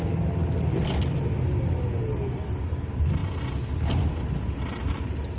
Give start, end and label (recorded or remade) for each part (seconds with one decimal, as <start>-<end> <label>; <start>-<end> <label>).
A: 0.0-5.4 recorded